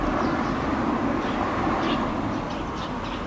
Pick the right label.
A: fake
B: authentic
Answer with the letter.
B